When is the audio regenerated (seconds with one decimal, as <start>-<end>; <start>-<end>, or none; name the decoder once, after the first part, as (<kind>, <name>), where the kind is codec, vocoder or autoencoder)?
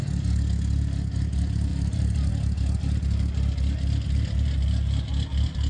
1.7-2.3 (vocoder, BigVGAN v2)